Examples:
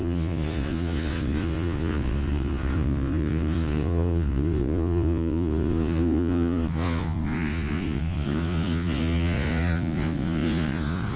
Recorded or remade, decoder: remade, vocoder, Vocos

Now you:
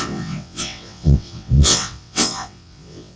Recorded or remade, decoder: remade, vocoder, WaveNeXt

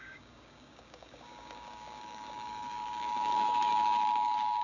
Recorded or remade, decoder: remade, codec, DAC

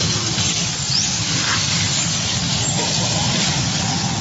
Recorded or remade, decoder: recorded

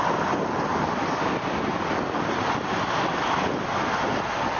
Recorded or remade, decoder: recorded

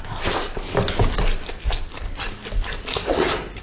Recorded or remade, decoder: recorded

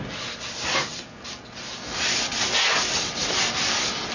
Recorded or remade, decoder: recorded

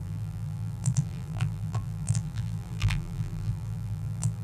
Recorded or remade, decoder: remade, vocoder, BigVGAN v2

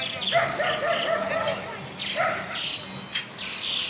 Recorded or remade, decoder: recorded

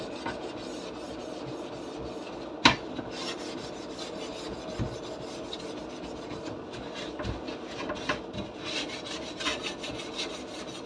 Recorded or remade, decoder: recorded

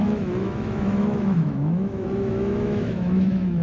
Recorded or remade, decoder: remade, autoencoder, DAC-VAE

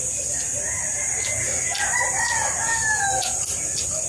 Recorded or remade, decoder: recorded